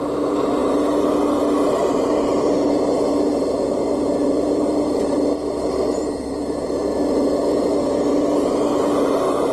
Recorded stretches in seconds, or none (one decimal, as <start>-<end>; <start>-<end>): 0.0-1.8; 6.7-9.5